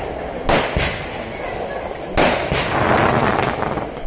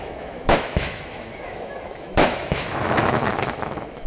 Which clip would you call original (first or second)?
first